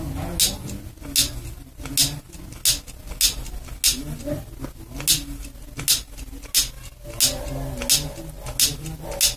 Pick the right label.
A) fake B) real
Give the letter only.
B